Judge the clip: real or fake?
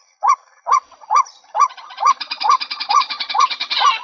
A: fake